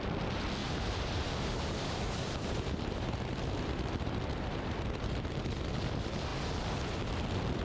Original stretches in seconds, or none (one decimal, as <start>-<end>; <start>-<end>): 0.0-0.6; 5.2-7.6